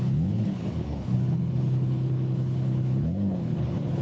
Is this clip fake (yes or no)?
yes